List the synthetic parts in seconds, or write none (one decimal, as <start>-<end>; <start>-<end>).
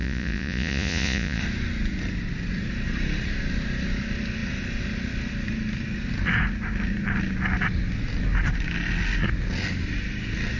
0.0-1.4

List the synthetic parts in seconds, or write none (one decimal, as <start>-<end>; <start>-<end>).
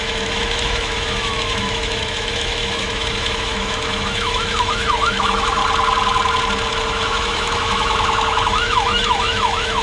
0.0-5.6; 6.7-9.8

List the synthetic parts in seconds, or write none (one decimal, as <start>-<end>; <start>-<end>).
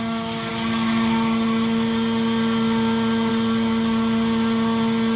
none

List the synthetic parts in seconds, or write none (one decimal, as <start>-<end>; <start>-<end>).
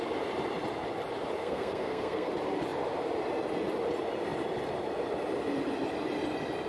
1.4-2.3